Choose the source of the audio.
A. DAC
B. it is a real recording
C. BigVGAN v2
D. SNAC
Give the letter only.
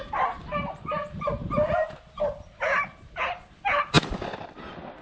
B